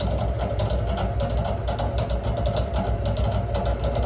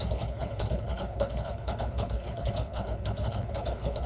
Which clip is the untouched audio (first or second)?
first